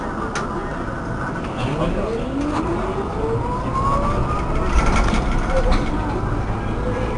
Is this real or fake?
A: real